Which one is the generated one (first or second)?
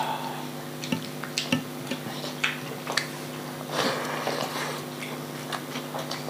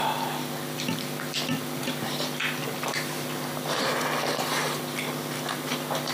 second